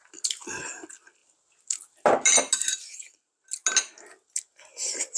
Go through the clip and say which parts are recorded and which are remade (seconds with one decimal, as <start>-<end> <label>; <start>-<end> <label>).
0.0-5.2 recorded